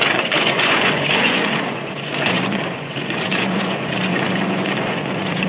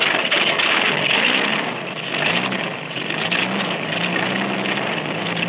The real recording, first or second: second